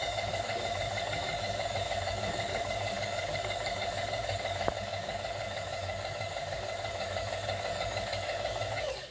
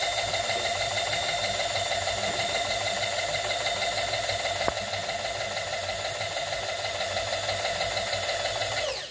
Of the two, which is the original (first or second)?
second